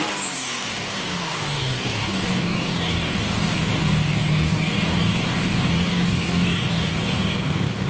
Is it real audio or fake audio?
fake